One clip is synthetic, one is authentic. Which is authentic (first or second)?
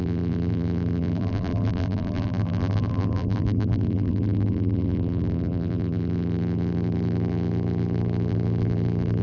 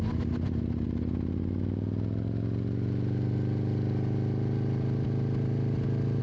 second